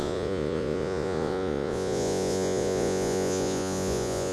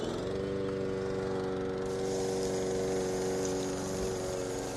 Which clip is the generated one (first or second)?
first